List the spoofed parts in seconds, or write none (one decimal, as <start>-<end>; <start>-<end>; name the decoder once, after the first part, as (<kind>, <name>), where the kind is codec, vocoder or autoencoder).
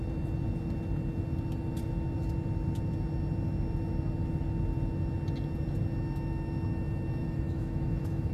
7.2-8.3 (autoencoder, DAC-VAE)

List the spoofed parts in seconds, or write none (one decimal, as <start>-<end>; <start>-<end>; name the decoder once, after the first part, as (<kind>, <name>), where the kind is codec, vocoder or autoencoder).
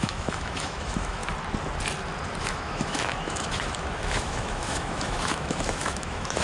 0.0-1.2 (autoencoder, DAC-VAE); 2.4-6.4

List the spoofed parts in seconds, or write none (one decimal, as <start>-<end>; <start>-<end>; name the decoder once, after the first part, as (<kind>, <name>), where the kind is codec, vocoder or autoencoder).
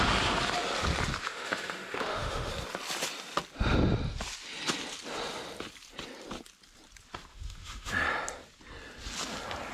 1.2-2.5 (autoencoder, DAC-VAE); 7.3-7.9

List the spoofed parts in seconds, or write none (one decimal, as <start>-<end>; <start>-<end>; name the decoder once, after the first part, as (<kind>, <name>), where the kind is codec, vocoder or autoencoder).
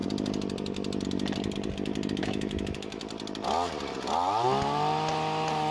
2.2-3.0 (autoencoder, DAC-VAE)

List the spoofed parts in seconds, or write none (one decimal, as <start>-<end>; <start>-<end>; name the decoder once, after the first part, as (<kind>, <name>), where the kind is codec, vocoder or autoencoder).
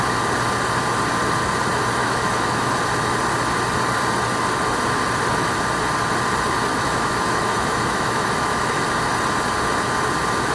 2.0-2.8 (autoencoder, DAC-VAE); 6.7-8.8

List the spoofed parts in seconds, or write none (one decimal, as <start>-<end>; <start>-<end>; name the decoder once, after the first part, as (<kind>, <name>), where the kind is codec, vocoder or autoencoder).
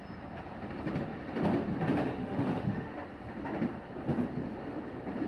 2.2-2.9 (autoencoder, DAC-VAE)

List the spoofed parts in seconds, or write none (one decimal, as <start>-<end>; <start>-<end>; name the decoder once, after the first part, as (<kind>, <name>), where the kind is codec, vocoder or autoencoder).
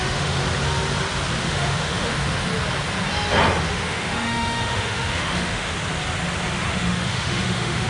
0.0-0.4 (autoencoder, DAC-VAE); 1.4-2.5; 3.6-5.7; 6.7-7.9